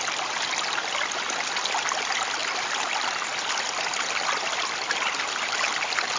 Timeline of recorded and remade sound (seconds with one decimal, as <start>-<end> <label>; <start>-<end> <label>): 0.0-6.2 recorded